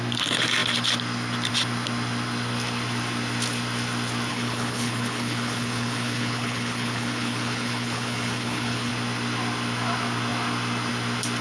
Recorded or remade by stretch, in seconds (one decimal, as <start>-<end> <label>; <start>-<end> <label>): 0.0-4.3 recorded; 4.3-8.9 remade; 8.9-11.4 recorded